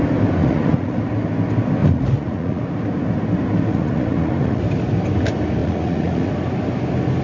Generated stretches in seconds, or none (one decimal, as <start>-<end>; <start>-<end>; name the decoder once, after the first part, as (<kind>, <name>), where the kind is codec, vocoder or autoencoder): 0.4-1.0 (vocoder, Vocos); 1.8-2.6; 3.7-4.6; 5.6-6.3

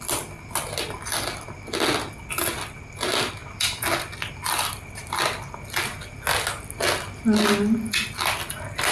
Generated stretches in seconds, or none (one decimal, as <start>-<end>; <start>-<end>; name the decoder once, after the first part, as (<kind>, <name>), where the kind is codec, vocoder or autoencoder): none

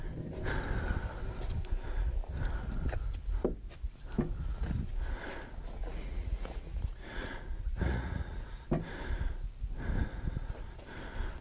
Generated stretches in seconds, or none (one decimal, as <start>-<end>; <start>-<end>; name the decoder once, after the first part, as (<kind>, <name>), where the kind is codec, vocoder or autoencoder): 5.8-8.7 (vocoder, Vocos)

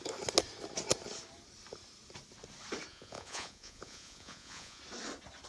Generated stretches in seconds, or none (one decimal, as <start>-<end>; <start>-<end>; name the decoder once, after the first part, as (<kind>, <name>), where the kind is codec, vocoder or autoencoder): 2.9-4.8 (vocoder, Vocos)

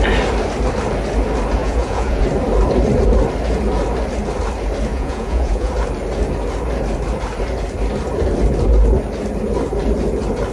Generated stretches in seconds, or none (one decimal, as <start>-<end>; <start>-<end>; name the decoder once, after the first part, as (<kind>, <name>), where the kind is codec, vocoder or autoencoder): 1.6-2.2 (vocoder, Vocos); 4.9-5.7

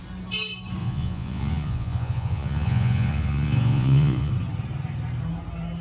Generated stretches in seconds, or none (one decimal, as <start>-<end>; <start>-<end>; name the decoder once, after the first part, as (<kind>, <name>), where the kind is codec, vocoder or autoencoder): 0.8-4.3 (vocoder, Vocos)

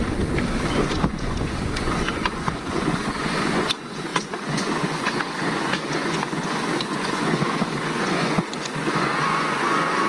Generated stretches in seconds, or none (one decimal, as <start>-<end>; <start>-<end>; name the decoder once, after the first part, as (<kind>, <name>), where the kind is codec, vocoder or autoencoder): 0.7-10.1 (vocoder, Vocos)

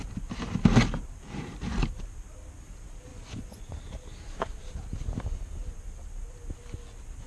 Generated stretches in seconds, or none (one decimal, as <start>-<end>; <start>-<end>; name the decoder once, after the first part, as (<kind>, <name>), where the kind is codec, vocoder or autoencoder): 3.1-3.8 (vocoder, Vocos)